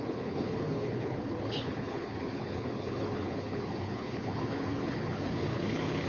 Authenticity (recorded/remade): remade